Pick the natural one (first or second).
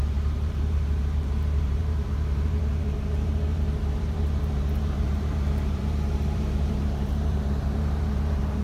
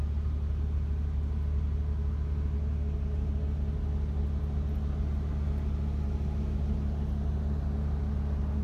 second